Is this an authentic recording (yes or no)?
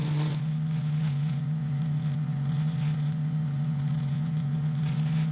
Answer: no